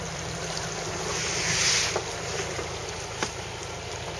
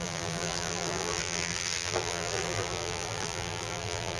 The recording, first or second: first